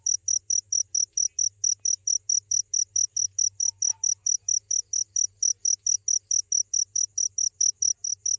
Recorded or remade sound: recorded